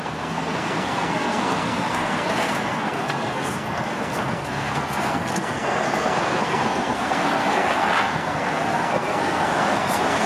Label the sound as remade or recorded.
remade